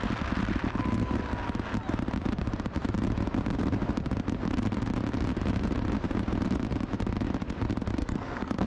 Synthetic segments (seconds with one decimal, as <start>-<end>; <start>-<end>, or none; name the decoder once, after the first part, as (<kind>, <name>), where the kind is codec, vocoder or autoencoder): 8.0-8.7 (codec, SNAC)